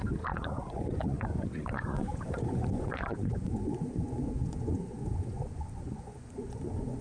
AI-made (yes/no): yes